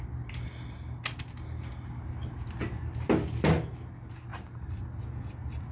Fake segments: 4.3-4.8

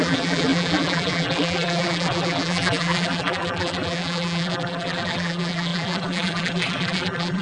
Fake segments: 0.0-7.4

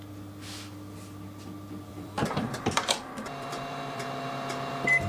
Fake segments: 1.9-5.1

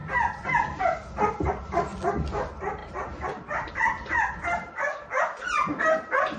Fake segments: 0.0-0.8; 2.8-3.7

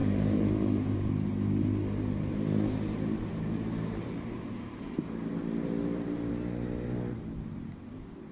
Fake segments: 0.0-1.1; 3.3-6.3

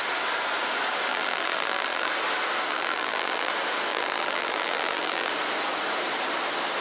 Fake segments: 1.1-2.1; 2.7-3.5; 3.9-5.3